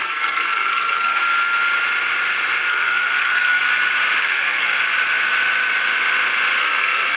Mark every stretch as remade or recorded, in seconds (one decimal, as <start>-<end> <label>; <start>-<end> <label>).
0.0-1.2 remade; 1.2-2.7 recorded; 2.7-3.6 remade; 3.6-4.2 recorded; 4.2-4.8 remade; 4.8-6.6 recorded; 6.6-7.2 remade